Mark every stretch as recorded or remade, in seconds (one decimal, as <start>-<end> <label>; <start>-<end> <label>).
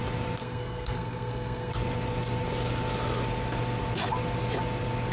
0.0-0.4 recorded; 0.4-1.7 remade; 1.7-5.1 recorded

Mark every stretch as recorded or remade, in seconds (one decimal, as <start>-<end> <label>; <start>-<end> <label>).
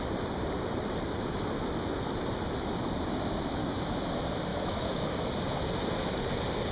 0.0-3.6 recorded; 3.6-4.1 remade; 4.1-4.5 recorded; 4.5-5.3 remade; 5.3-6.7 recorded